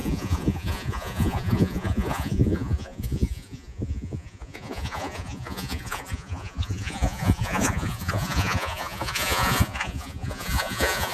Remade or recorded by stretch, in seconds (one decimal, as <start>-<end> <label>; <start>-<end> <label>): 0.0-11.1 remade